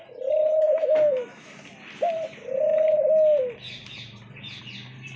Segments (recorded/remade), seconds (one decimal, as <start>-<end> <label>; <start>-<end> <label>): 0.0-0.7 recorded; 0.7-1.5 remade; 1.5-5.2 recorded